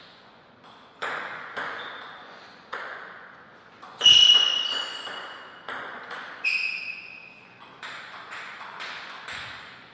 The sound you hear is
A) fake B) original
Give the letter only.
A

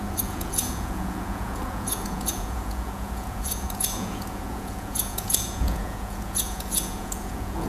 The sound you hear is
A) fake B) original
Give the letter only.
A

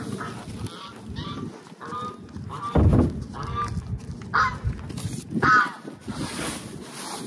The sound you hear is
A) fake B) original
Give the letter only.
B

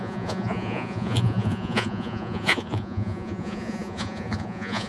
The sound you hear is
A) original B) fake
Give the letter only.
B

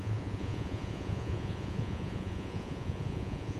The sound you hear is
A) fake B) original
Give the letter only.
A